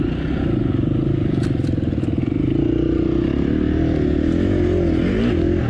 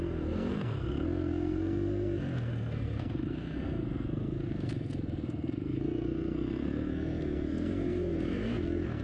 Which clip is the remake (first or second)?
second